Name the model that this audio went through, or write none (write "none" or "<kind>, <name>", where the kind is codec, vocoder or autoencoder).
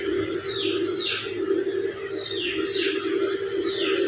none